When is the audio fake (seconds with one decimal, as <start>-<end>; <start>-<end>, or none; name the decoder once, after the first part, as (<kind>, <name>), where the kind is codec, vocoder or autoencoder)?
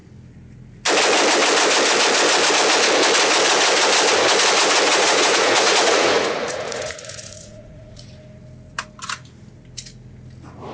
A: 4.9-8.1 (vocoder, Vocos)